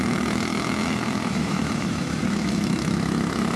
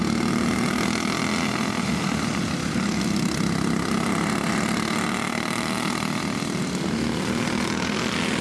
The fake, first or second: first